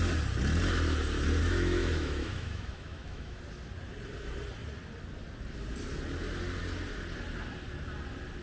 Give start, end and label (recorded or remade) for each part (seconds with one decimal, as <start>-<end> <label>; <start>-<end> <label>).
0.0-1.4 recorded; 1.4-3.4 remade; 3.4-8.4 recorded